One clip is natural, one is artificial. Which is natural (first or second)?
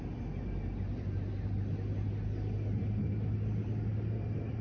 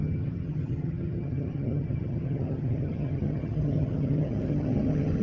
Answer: first